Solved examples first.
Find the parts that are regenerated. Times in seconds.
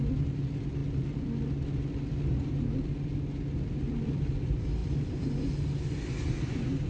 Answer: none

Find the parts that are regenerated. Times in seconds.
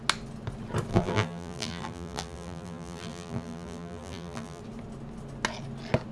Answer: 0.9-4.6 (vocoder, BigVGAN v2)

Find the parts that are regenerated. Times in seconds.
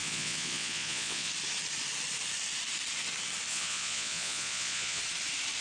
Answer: 0.0-1.3 (vocoder, Vocos); 3.5-5.0